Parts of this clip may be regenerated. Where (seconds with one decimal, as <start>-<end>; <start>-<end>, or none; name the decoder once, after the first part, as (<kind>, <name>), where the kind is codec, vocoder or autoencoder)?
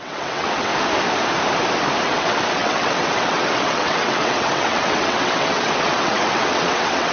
0.0-0.7 (vocoder, WaveNeXt); 2.0-7.1